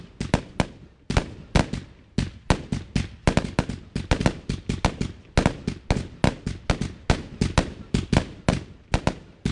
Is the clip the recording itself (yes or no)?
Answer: yes